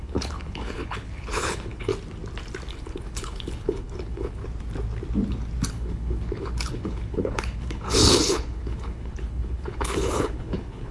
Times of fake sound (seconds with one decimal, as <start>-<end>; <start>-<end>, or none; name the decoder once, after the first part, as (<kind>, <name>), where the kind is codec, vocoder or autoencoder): 0.0-1.9 (codec, HILCodec); 2.7-4.4; 5.7-10.9